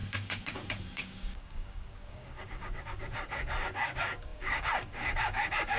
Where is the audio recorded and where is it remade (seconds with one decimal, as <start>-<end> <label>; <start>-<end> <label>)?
0.0-5.8 remade